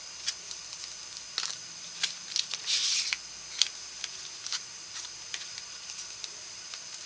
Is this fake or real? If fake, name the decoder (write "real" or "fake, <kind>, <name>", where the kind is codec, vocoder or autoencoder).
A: real